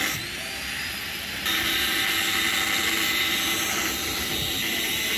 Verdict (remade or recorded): recorded